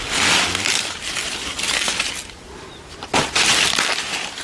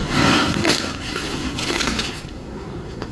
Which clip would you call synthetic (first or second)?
second